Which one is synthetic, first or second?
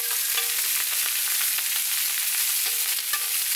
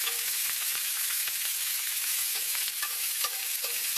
second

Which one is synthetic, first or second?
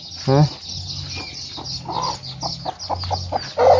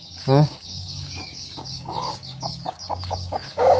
second